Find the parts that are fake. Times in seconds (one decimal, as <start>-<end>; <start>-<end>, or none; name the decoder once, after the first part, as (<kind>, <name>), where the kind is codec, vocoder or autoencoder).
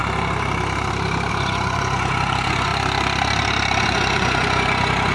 1.3-2.7 (vocoder, Vocos); 3.8-5.1